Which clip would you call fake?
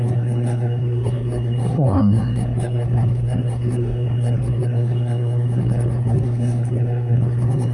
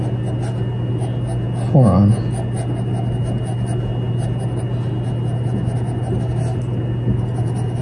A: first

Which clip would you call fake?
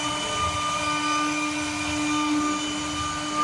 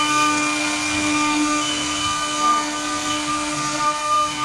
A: second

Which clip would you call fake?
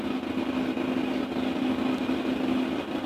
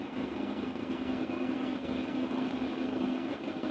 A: second